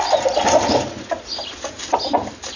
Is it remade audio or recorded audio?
recorded